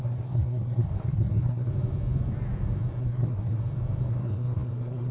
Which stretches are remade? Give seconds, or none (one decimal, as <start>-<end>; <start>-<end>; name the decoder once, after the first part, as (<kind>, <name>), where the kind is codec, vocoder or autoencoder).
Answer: 0.0-1.7 (codec, SNAC); 3.0-3.6; 4.1-5.1